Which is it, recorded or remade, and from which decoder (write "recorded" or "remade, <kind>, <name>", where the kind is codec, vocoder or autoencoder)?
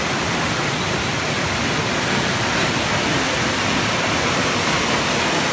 recorded